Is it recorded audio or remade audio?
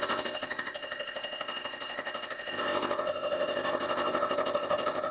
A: remade